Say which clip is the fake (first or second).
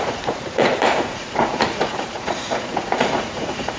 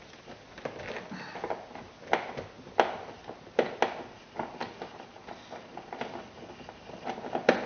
first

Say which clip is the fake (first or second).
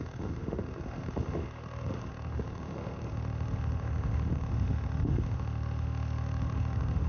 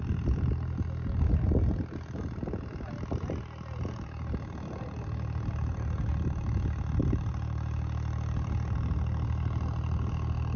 first